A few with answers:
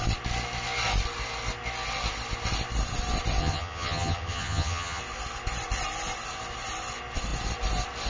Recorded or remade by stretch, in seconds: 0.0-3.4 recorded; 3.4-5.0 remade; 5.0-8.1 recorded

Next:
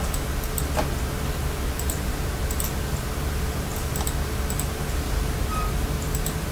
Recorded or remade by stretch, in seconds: 0.0-6.5 recorded

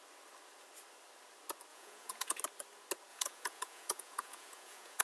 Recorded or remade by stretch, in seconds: 0.0-1.7 recorded; 1.7-2.4 remade; 2.4-3.1 recorded; 3.1-5.0 remade

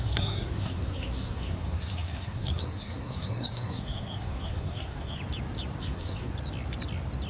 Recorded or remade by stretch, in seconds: 0.0-5.2 remade; 5.2-5.8 recorded; 5.8-6.3 remade; 6.3-7.3 recorded

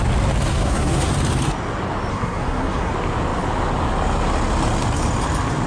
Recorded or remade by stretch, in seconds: 0.0-0.5 recorded; 0.5-1.1 remade; 1.1-2.1 recorded; 2.1-2.9 remade; 2.9-5.7 recorded